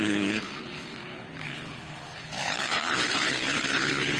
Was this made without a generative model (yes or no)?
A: no